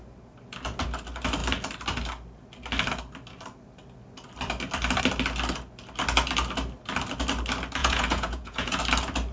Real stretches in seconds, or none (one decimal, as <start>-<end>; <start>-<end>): 0.0-7.8; 8.8-9.3